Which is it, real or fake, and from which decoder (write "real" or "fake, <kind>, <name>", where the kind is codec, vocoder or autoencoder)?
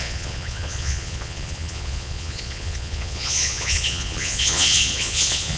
fake, vocoder, Vocos